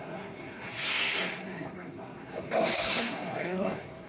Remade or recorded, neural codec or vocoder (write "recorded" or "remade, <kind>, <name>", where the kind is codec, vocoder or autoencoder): remade, codec, SNAC